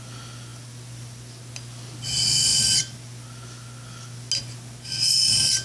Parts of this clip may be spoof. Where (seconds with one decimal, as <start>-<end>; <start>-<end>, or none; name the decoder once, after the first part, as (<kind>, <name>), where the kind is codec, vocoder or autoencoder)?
none